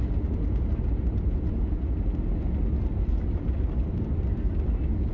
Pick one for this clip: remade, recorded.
recorded